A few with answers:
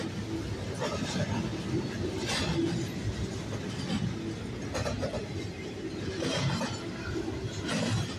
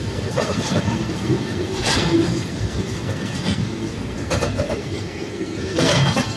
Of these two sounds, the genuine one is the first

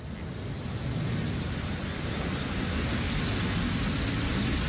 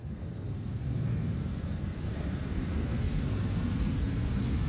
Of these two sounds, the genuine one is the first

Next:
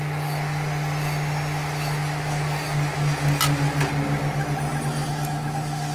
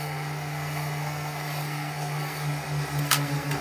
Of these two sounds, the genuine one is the first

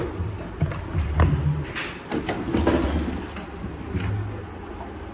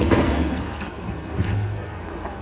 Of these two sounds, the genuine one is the first